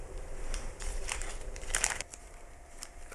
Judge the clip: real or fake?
fake